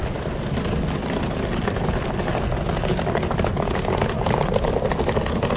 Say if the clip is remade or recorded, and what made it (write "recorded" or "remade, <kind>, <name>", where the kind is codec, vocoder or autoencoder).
recorded